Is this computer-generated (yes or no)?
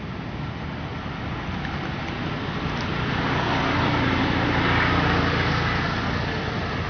no